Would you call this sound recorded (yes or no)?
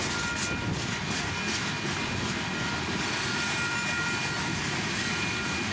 yes